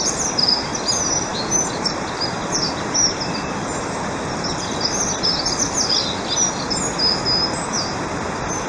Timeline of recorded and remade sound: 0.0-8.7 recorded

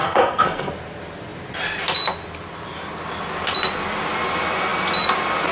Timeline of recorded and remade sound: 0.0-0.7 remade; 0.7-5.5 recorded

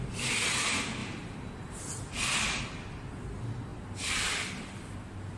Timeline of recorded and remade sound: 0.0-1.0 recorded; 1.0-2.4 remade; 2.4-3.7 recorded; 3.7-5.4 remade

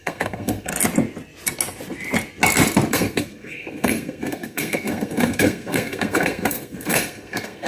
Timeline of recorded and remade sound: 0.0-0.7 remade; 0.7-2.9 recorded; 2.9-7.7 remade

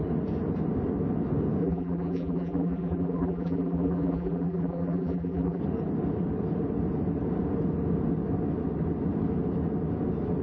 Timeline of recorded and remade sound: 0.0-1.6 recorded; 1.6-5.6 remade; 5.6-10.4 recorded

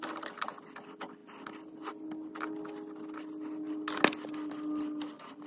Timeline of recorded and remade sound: 0.0-5.5 recorded

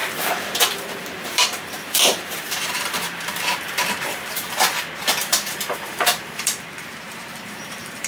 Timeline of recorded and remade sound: 0.0-4.5 remade; 4.5-5.2 recorded; 5.2-8.1 remade

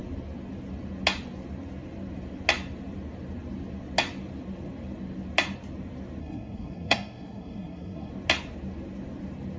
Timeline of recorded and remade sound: 0.0-6.2 recorded; 6.2-8.1 remade; 8.1-9.6 recorded